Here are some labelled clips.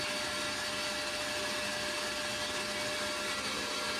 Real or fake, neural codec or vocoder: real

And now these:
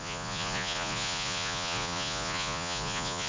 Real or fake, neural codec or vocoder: fake, vocoder, Vocos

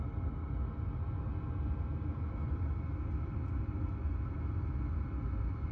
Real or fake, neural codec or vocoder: real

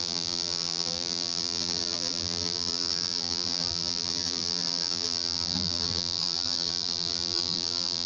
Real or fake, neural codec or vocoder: fake, vocoder, BigVGAN v2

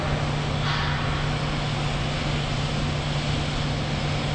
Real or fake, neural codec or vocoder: real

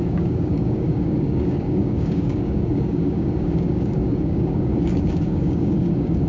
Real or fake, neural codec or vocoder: fake, codec, DAC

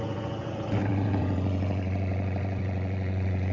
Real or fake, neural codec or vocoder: fake, vocoder, Vocos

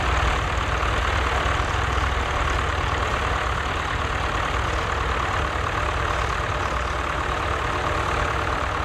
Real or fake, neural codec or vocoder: fake, vocoder, BigVGAN v2